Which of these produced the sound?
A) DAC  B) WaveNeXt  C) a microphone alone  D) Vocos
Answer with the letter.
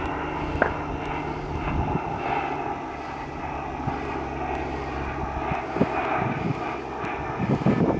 C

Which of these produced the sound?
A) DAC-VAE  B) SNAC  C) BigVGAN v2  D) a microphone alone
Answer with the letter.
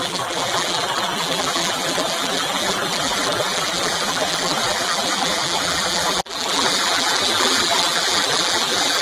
C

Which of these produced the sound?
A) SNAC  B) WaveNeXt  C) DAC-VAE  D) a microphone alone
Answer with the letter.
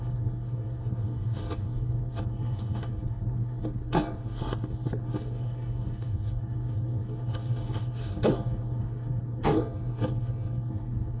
A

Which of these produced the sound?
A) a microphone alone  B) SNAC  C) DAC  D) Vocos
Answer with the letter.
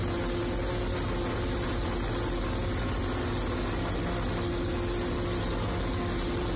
A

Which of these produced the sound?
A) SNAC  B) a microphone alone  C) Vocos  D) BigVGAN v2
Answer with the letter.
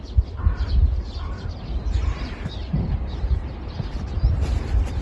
B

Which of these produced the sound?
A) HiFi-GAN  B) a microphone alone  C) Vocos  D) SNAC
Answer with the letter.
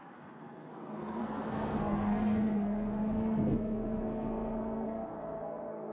D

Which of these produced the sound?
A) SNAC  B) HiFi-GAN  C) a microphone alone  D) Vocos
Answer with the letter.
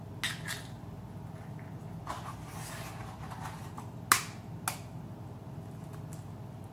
C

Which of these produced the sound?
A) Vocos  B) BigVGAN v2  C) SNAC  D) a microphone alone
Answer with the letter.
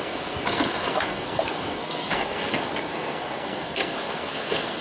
C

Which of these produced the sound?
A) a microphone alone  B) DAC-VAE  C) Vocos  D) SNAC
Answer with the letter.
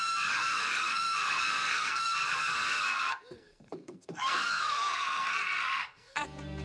D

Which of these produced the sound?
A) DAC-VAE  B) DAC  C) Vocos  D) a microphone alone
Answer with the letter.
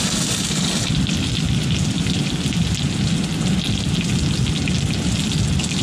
D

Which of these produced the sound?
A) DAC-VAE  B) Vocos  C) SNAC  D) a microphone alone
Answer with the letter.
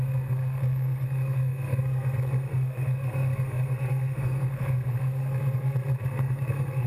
C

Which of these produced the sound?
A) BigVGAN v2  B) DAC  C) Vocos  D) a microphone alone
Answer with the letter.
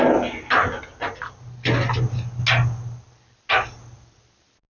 D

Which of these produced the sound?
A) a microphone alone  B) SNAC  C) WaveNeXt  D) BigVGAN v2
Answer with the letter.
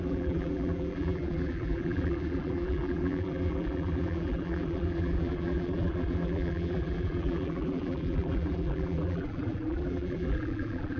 D